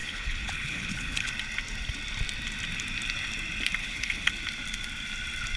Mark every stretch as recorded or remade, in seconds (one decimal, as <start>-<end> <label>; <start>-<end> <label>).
0.0-1.3 remade; 1.3-3.8 recorded; 3.8-4.3 remade; 4.3-5.6 recorded